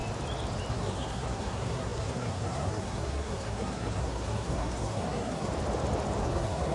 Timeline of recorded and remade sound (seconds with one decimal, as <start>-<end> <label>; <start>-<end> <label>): 0.0-0.7 recorded; 0.7-5.5 remade; 5.5-6.2 recorded; 6.2-6.7 remade